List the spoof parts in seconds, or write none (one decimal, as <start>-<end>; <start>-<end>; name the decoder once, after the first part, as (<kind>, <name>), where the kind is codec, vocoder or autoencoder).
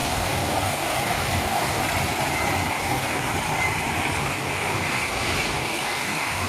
0.0-1.8 (codec, DAC); 2.7-3.3; 4.2-6.5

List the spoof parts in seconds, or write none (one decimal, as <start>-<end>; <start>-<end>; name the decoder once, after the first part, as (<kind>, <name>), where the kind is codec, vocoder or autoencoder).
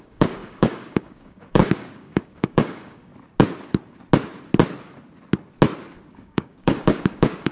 0.0-3.1 (codec, DAC); 6.2-7.5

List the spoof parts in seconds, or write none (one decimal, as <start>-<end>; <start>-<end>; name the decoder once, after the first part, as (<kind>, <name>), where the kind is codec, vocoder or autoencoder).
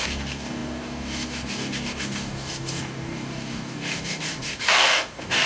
0.0-5.5 (codec, DAC)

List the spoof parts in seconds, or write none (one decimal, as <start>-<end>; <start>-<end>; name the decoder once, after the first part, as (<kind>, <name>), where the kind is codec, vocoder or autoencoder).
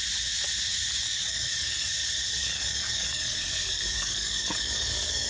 1.1-1.9 (codec, DAC); 2.4-5.3